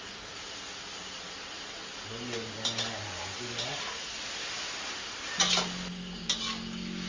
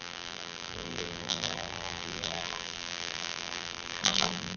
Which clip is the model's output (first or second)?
second